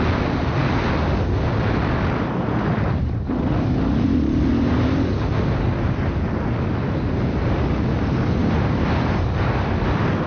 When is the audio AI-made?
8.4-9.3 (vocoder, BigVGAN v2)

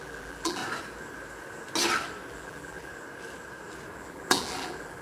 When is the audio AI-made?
0.0-0.6 (vocoder, BigVGAN v2); 2.3-2.9; 4.0-5.0

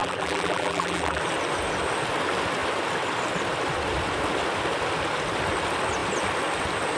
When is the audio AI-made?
0.0-1.2 (vocoder, BigVGAN v2)

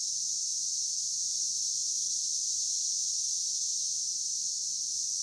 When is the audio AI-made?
none

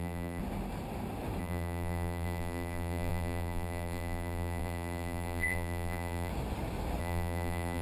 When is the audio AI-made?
0.0-0.4 (vocoder, BigVGAN v2); 1.4-6.3; 7.0-7.8